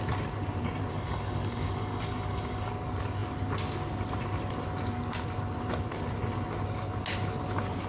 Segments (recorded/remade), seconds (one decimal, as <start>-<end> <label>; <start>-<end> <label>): 0.0-0.9 recorded; 0.9-2.7 remade; 2.7-7.9 recorded